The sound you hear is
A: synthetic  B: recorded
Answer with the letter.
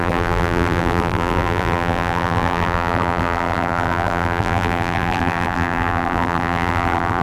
A